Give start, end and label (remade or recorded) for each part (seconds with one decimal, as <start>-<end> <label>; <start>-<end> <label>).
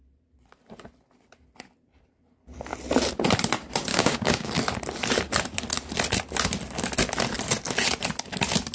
0.0-3.9 recorded; 3.9-4.5 remade; 4.5-8.7 recorded